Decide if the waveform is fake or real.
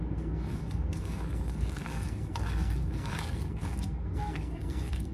fake